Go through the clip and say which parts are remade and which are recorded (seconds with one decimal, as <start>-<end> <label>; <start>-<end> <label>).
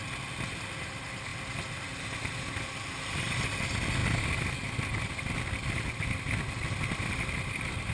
0.0-7.9 recorded